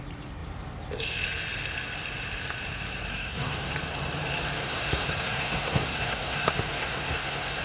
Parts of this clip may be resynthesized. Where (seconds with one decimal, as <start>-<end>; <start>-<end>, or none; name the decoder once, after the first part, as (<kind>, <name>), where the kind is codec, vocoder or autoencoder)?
3.1-3.7 (codec, SNAC); 4.6-7.6

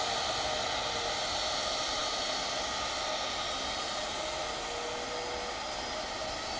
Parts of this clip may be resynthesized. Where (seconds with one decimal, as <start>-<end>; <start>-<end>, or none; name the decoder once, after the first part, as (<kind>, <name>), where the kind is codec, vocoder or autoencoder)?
none

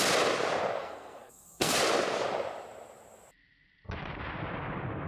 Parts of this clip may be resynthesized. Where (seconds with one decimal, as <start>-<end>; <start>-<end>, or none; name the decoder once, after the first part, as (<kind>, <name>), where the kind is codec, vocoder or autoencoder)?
0.8-1.8 (codec, SNAC)

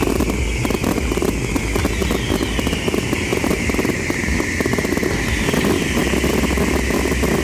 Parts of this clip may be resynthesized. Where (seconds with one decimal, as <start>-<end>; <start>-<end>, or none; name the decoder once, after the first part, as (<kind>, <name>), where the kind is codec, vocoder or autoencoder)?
none

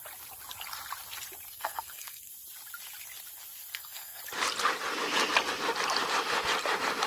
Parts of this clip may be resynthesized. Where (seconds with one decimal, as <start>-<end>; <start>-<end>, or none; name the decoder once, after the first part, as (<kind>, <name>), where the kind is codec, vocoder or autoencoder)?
1.5-2.3 (codec, SNAC); 3.7-4.2

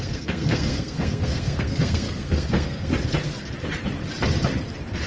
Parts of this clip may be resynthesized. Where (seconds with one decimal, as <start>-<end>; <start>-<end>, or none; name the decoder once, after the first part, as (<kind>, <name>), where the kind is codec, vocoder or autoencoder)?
0.0-2.9 (codec, SNAC)